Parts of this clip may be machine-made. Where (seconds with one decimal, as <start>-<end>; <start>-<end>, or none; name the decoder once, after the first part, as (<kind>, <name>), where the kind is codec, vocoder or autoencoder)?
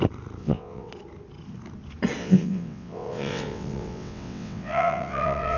0.4-0.9 (vocoder, WaveNeXt); 2.2-5.6